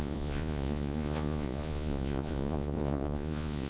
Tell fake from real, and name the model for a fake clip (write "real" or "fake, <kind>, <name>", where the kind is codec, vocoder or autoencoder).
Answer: fake, vocoder, Vocos